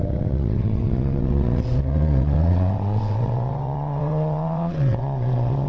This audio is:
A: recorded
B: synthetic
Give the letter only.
B